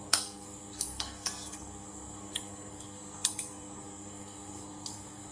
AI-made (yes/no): yes